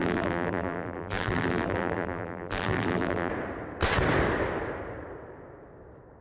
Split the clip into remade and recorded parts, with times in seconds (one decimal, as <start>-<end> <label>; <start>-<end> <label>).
0.0-3.3 remade; 3.3-6.2 recorded